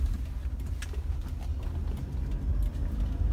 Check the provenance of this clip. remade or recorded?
recorded